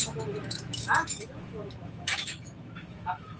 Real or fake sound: fake